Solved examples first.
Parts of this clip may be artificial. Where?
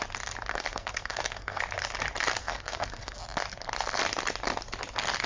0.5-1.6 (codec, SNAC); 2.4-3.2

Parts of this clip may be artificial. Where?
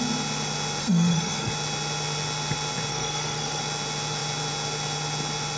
0.8-1.5 (codec, SNAC); 2.9-3.6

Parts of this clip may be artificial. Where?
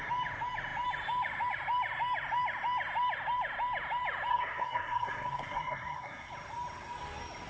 4.3-6.3 (codec, SNAC)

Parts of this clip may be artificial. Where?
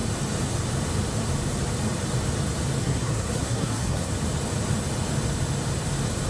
2.8-4.1 (codec, SNAC)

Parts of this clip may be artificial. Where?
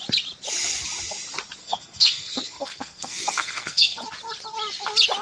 1.6-4.0 (codec, SNAC)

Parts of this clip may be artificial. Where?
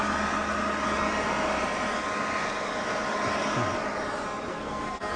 4.5-5.2 (codec, SNAC)